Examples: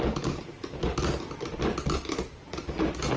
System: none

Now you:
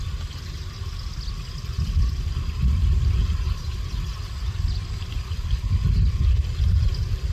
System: none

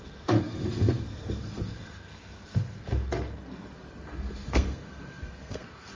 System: codec, SNAC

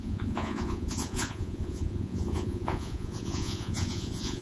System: vocoder, Vocos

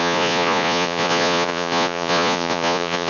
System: vocoder, Vocos